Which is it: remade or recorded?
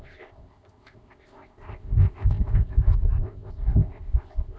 remade